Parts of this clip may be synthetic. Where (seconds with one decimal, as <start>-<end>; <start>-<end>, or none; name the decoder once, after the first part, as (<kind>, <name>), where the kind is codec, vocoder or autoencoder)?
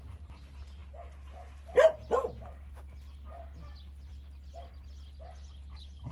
none